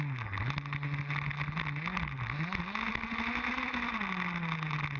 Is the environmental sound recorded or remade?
recorded